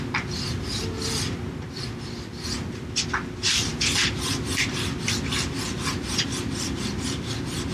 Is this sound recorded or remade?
recorded